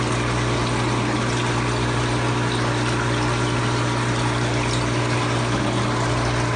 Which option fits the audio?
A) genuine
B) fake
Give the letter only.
A